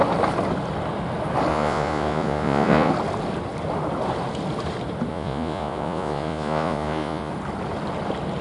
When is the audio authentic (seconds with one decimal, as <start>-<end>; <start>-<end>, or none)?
0.0-1.5; 2.9-5.1; 7.3-8.4